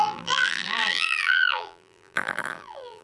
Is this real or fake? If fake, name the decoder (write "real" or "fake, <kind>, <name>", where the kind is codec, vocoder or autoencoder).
fake, vocoder, BigVGAN v2